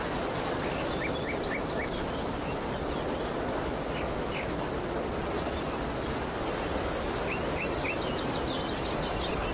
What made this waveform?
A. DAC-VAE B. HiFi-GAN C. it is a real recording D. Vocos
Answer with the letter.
C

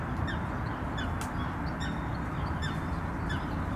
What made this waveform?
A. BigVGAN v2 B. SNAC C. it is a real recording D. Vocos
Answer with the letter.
C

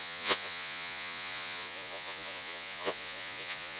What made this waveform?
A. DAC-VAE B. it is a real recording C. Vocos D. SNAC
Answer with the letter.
C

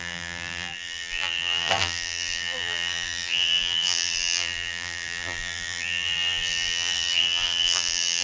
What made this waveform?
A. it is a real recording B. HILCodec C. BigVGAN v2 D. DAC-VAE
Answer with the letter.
C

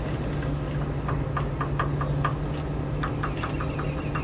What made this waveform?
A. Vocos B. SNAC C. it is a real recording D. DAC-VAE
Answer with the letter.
C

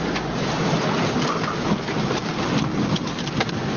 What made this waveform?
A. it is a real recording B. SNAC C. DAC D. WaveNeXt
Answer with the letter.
A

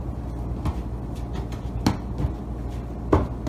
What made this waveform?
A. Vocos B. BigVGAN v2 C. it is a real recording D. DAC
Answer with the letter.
C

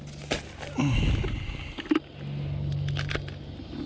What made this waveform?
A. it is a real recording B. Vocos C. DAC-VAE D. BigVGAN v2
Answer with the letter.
A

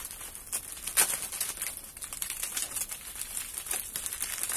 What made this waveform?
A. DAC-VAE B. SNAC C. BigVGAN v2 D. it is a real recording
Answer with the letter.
D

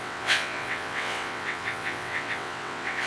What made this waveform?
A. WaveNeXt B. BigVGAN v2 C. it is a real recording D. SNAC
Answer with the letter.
A